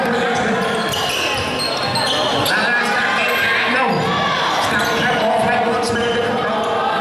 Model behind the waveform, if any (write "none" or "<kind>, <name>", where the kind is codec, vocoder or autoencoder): none